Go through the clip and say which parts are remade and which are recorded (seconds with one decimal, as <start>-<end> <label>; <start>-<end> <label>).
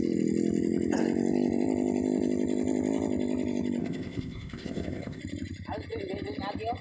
0.0-3.8 recorded; 3.8-5.2 remade; 5.2-6.8 recorded